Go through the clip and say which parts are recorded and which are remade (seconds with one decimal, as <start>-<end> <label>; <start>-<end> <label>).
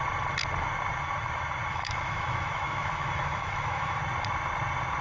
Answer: 0.0-1.7 recorded; 1.7-4.0 remade; 4.0-5.0 recorded